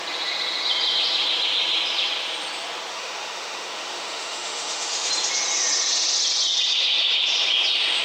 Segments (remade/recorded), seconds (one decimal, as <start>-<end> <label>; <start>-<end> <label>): 0.0-2.9 recorded; 2.9-5.1 remade; 5.1-8.0 recorded

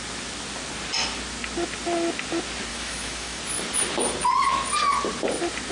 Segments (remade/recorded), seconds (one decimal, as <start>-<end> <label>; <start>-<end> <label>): 0.0-2.7 recorded; 2.7-3.4 remade; 3.4-5.7 recorded